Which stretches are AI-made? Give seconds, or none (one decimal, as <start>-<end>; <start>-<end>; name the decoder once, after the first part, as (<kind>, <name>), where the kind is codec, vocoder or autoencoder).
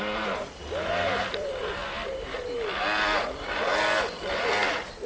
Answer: none